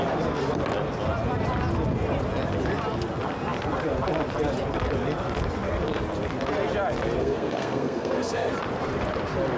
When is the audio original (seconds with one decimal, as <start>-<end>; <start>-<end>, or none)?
0.0-7.2; 8.5-9.6